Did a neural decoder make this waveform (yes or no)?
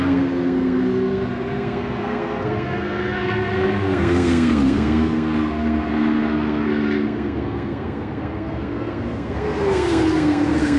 yes